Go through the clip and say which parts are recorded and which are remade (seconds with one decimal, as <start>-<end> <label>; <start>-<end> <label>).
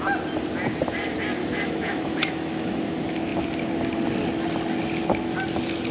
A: 0.0-1.4 recorded; 1.4-2.8 remade; 2.8-5.9 recorded